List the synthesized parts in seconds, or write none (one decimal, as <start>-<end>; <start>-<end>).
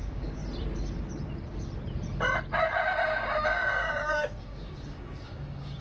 0.0-0.4; 3.5-5.8